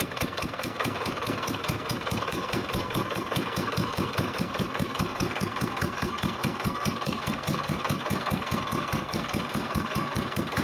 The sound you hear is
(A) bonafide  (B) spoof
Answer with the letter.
B